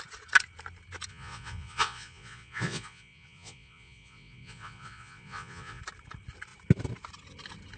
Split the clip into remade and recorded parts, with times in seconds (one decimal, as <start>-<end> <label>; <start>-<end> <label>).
0.0-1.1 recorded; 1.1-5.8 remade; 5.8-7.8 recorded